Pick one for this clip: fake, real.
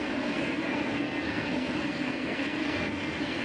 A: fake